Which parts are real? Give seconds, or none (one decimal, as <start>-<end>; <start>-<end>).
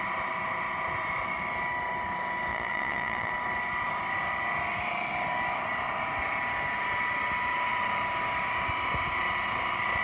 0.0-2.5; 3.3-10.0